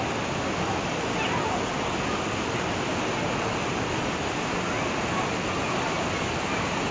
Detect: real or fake real